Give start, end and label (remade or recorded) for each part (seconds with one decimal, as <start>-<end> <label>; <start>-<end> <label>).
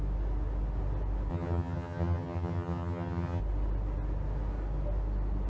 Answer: 0.0-1.3 recorded; 1.3-3.4 remade; 3.4-5.5 recorded